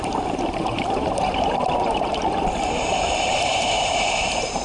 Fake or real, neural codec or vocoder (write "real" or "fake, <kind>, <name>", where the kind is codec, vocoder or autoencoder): fake, vocoder, BigVGAN v2